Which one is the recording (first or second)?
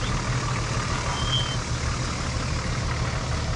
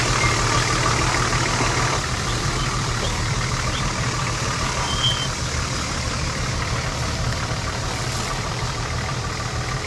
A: first